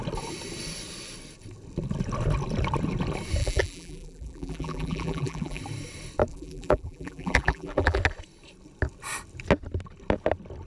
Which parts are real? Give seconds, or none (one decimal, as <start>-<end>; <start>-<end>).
0.0-3.4; 5.6-6.3; 8.0-10.7